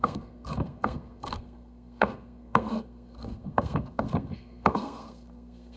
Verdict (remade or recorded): remade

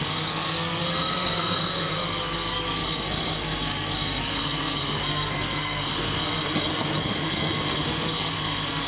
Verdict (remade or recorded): remade